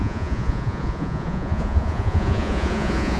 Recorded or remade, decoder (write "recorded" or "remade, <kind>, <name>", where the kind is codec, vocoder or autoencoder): remade, vocoder, Vocos